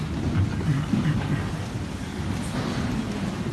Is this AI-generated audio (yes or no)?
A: no